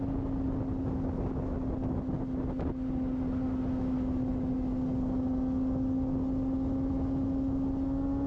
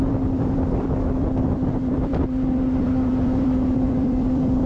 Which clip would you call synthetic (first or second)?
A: second